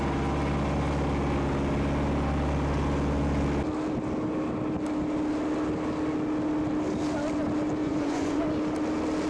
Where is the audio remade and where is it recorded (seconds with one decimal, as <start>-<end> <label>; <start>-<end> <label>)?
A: 0.0-7.8 recorded; 7.8-8.4 remade; 8.4-9.3 recorded

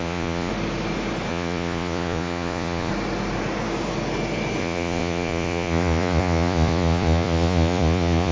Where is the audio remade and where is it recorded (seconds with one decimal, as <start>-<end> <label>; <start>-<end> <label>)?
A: 0.0-0.5 remade; 0.5-1.3 recorded; 1.3-2.9 remade; 2.9-4.6 recorded; 4.6-8.3 remade

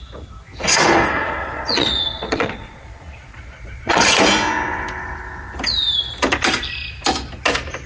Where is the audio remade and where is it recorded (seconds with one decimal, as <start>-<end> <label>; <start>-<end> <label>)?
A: 0.0-1.2 recorded; 1.2-4.2 remade; 4.2-7.9 recorded

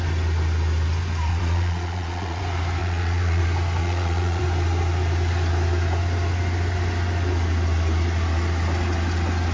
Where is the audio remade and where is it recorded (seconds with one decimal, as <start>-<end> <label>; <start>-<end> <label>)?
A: 0.0-1.3 recorded; 1.3-2.4 remade; 2.4-2.8 recorded; 2.8-3.4 remade; 3.4-3.8 recorded; 3.8-4.4 remade; 4.4-9.5 recorded

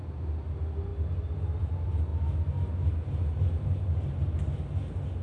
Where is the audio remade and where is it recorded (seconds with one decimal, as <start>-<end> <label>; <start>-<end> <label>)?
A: 0.0-5.2 recorded

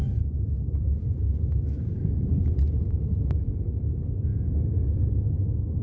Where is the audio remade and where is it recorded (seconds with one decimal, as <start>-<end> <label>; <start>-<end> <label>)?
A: 0.0-5.8 recorded

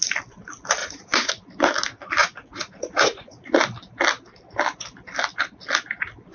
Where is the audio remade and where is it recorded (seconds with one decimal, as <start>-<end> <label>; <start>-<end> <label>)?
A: 0.0-0.8 recorded; 0.8-1.3 remade; 1.3-2.2 recorded; 2.2-3.6 remade; 3.6-6.3 recorded

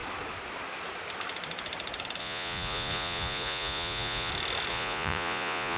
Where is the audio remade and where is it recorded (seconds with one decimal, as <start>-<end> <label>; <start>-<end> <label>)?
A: 0.0-2.2 recorded; 2.2-4.3 remade; 4.3-4.7 recorded; 4.7-5.8 remade